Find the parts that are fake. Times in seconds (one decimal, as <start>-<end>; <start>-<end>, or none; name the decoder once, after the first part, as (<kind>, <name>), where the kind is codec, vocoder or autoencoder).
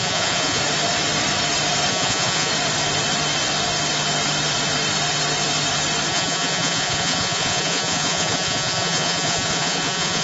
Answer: 0.0-0.6 (vocoder, Vocos); 1.9-2.5; 6.1-10.2